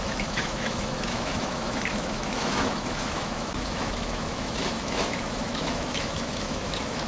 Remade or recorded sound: remade